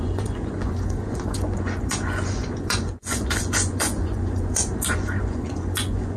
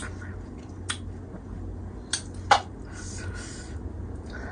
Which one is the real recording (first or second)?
second